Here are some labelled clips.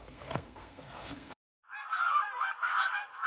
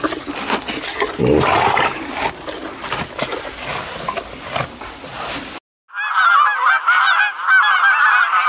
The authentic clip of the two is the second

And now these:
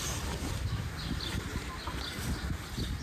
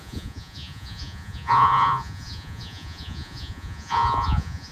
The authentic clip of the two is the first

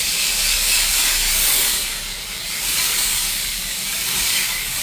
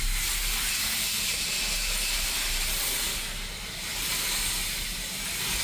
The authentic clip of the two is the second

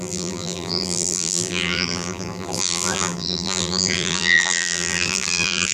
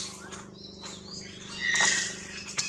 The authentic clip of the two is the second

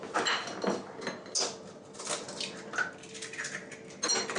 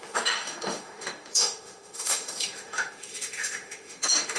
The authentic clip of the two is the first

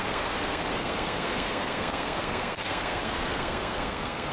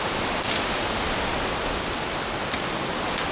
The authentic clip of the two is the second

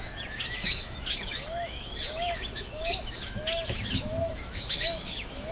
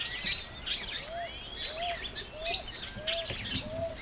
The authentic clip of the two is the second